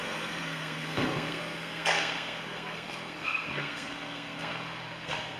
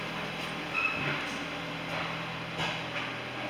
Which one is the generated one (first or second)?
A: first